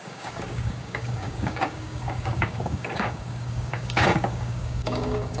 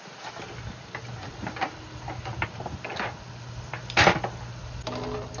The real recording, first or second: second